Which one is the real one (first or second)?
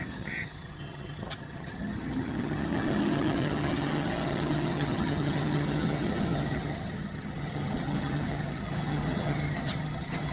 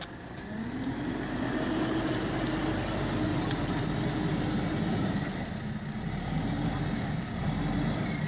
second